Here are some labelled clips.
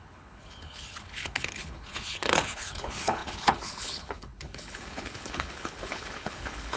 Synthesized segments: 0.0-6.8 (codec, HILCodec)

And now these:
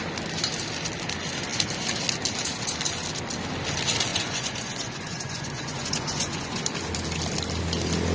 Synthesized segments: 4.1-6.6 (vocoder, Vocos)

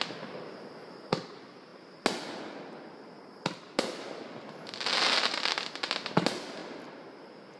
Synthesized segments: none

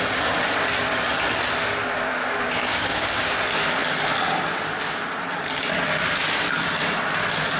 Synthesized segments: 2.2-3.3 (codec, DAC)

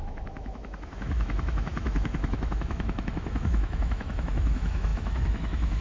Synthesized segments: 0.0-5.8 (autoencoder, DAC-VAE)

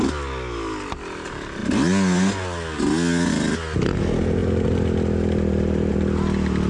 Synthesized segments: none

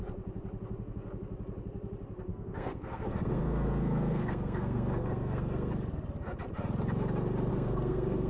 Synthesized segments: 2.3-5.7 (codec, SNAC); 7.5-8.3